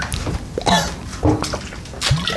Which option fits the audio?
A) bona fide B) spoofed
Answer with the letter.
A